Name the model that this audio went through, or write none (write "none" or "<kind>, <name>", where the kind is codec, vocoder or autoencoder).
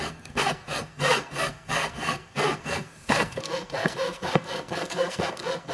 codec, SNAC